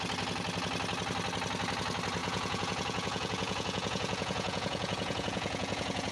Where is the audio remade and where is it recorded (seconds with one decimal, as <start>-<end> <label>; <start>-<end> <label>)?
0.0-2.2 recorded; 2.2-6.1 remade